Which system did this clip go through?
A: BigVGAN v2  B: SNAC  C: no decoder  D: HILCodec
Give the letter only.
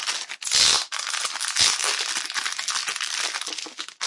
C